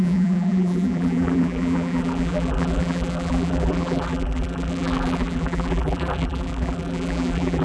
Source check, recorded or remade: remade